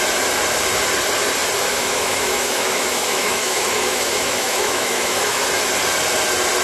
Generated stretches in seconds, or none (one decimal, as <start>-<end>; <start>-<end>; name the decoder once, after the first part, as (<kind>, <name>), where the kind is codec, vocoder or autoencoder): 1.7-5.4 (autoencoder, DAC-VAE)